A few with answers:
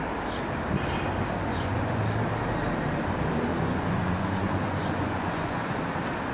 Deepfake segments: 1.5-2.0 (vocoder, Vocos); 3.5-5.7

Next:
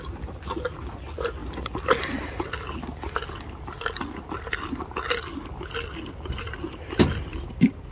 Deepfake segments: none